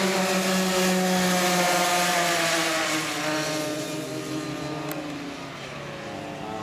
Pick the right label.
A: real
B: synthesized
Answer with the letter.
A